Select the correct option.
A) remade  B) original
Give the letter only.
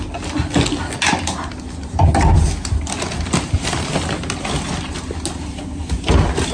B